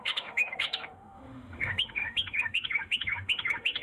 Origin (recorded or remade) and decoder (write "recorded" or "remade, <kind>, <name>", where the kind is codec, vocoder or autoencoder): remade, autoencoder, DAC-VAE